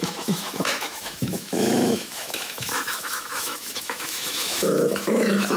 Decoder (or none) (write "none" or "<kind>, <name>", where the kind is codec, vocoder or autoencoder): autoencoder, DAC-VAE